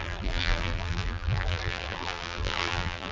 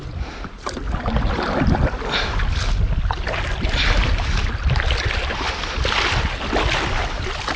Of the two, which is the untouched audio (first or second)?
second